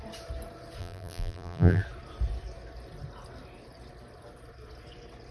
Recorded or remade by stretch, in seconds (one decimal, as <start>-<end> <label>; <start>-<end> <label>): 0.0-0.8 recorded; 0.8-1.8 remade; 1.8-5.3 recorded